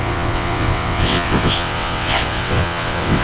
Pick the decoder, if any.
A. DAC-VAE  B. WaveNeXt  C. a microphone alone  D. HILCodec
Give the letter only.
B